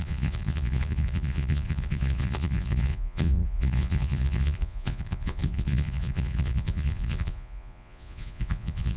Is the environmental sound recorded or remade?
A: remade